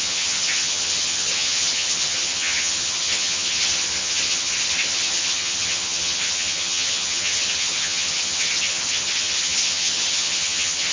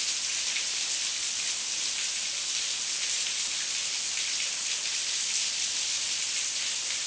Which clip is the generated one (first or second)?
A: first